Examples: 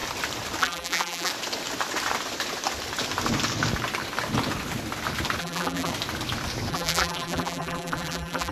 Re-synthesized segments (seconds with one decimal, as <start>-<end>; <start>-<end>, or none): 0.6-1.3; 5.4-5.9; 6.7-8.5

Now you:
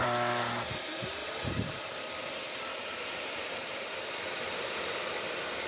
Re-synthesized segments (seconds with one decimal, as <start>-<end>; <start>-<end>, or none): 1.2-1.9; 2.7-3.9

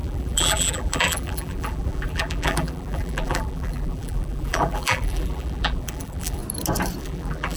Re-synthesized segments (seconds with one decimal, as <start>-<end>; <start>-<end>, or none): 0.0-6.4; 7.0-7.6

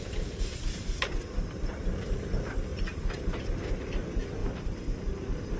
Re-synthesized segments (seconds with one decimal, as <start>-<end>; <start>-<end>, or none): 4.4-5.0

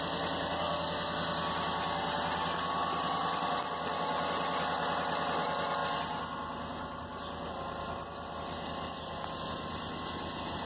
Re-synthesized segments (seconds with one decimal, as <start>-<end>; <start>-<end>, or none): none